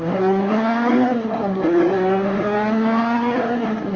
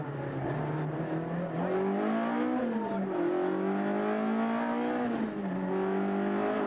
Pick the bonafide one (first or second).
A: second